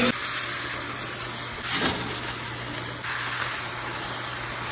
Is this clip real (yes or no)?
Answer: yes